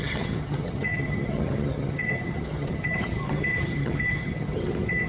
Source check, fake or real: fake